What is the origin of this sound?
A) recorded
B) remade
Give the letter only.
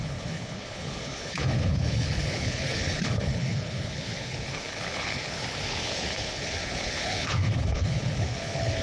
B